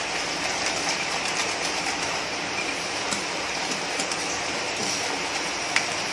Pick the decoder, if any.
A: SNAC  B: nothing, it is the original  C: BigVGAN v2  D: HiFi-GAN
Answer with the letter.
C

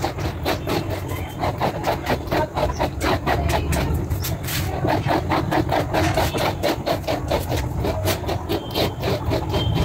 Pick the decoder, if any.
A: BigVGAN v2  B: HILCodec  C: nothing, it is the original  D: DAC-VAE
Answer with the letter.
C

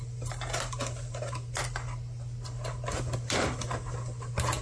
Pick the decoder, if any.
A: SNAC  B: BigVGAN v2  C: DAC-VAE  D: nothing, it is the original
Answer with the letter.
D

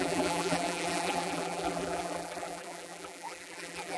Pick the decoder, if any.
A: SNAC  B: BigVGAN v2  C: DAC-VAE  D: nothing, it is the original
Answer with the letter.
B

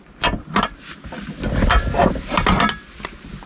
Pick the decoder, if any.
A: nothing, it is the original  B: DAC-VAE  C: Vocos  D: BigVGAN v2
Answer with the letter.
A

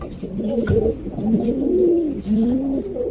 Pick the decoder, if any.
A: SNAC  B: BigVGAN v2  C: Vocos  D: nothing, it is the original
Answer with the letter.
B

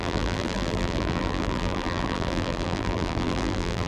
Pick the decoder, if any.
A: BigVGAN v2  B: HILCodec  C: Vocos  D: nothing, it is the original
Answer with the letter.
A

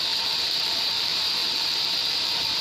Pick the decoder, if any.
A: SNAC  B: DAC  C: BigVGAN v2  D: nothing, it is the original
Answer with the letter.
C